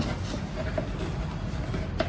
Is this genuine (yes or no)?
yes